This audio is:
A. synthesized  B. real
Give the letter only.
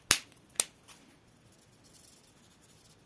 B